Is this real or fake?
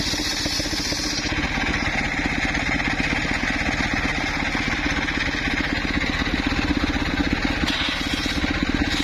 real